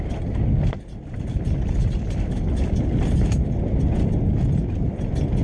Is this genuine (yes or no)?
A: yes